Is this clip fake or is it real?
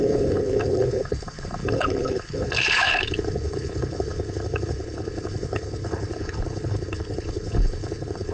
fake